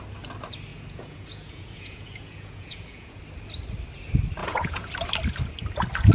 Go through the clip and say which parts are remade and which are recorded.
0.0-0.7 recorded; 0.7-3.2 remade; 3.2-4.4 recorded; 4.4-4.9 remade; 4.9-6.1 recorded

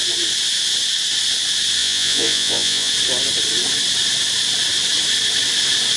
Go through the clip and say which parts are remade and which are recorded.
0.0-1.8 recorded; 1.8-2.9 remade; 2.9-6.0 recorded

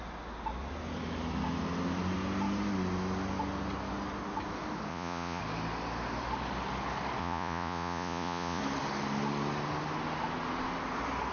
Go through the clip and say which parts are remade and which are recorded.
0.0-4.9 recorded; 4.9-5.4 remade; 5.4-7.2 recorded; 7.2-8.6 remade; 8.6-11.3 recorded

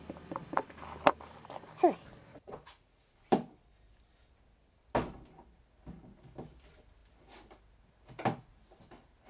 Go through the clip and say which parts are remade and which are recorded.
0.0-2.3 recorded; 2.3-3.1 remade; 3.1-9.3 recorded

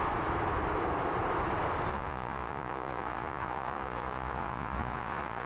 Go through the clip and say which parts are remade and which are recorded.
0.0-1.9 recorded; 1.9-5.5 remade

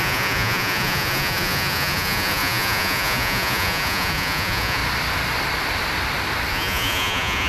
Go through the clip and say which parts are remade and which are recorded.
0.0-4.8 remade; 4.8-6.5 recorded; 6.5-7.5 remade

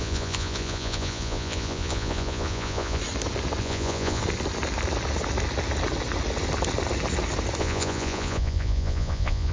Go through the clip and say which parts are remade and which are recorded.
0.0-3.0 remade; 3.0-3.6 recorded; 3.6-4.2 remade; 4.2-7.6 recorded; 7.6-9.5 remade